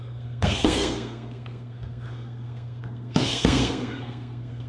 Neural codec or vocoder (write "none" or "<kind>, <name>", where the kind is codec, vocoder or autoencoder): codec, SNAC